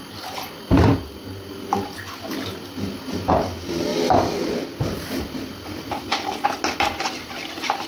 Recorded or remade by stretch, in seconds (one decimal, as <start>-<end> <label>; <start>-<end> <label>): 0.0-3.9 recorded; 3.9-6.0 remade; 6.0-7.9 recorded